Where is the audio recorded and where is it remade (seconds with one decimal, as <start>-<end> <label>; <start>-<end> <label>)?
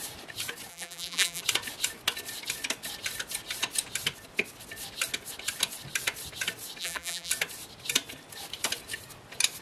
0.0-0.7 recorded; 0.7-1.4 remade; 1.4-6.8 recorded; 6.8-7.3 remade; 7.3-9.6 recorded